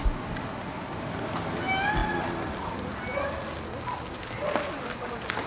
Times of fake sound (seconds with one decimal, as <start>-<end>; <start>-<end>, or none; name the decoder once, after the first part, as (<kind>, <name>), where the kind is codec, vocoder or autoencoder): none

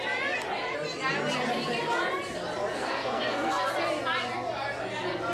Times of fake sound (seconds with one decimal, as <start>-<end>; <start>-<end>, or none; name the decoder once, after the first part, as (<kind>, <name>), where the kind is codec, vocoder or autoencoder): 2.7-3.7 (codec, SNAC)

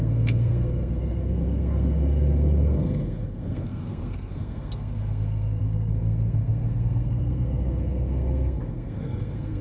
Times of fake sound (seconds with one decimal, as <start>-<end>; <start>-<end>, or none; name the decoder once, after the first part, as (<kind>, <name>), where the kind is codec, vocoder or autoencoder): 0.0-9.6 (codec, SNAC)

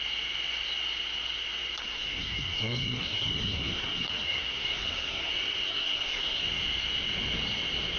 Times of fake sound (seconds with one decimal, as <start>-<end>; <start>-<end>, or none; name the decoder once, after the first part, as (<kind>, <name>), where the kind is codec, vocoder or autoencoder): 1.8-5.3 (codec, SNAC); 5.7-6.4

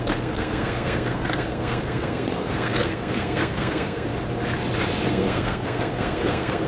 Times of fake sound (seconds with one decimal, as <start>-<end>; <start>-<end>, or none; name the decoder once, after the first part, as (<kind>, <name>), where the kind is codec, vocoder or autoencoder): 0.0-4.1 (codec, SNAC); 5.1-6.7

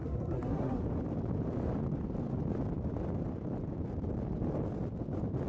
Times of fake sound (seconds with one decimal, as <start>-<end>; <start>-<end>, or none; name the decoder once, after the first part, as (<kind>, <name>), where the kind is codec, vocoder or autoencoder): 0.0-0.8 (codec, SNAC)